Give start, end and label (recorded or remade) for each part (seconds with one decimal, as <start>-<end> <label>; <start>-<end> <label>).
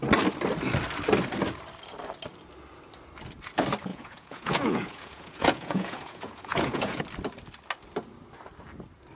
0.0-3.9 recorded; 3.9-7.0 remade; 7.0-9.2 recorded